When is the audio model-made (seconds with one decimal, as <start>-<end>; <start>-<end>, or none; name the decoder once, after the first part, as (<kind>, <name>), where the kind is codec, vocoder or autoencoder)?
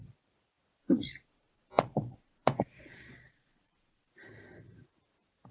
0.8-4.1 (vocoder, Vocos)